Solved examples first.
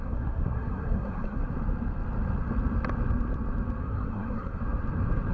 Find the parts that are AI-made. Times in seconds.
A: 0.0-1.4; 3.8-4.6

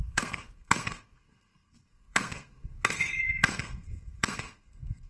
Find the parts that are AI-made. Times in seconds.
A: 0.0-5.1

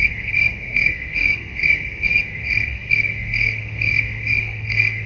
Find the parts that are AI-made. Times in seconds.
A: 0.0-5.1

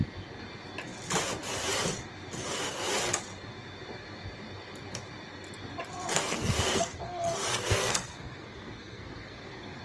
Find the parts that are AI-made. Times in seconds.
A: 6.1-9.8

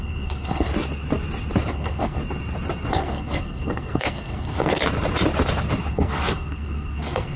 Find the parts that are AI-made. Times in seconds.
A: 0.0-0.7; 1.7-2.2; 2.9-4.8; 5.9-7.4

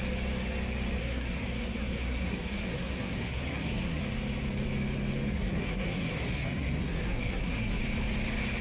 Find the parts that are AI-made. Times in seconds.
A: 1.0-4.0; 5.3-7.8

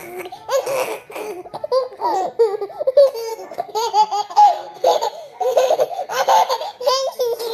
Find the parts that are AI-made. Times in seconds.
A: 3.3-6.9